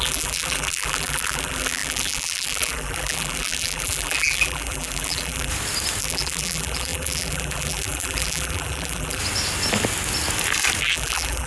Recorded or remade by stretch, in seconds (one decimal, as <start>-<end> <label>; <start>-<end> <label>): 0.0-5.5 remade; 5.5-6.0 recorded; 6.0-9.2 remade; 9.2-10.8 recorded; 10.8-11.5 remade